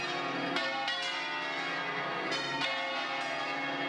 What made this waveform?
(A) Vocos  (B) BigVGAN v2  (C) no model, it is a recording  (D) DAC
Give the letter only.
C